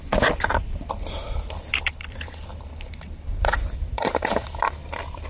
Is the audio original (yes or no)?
no